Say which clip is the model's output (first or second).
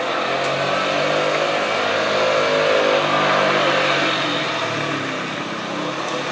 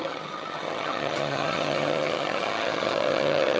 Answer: second